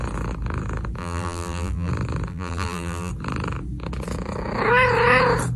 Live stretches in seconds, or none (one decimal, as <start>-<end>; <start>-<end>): 0.0-1.0; 1.9-2.3; 3.1-5.6